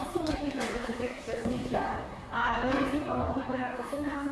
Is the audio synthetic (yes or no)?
yes